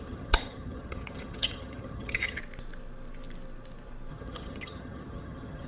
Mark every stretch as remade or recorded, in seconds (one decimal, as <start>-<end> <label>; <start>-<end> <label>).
0.0-2.4 remade; 2.4-4.1 recorded; 4.1-5.7 remade